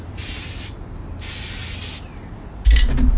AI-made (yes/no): no